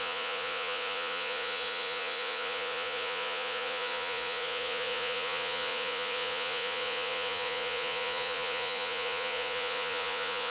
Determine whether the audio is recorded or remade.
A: remade